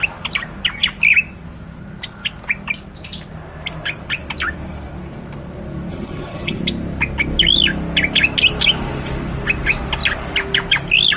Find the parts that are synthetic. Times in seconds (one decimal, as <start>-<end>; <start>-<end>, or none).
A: 5.9-6.6